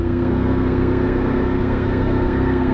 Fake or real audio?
fake